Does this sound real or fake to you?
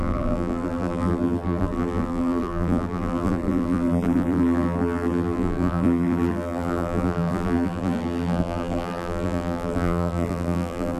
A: fake